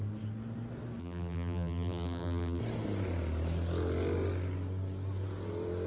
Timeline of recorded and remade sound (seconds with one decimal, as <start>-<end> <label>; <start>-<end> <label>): 0.0-1.0 recorded; 1.0-2.6 remade; 2.6-5.9 recorded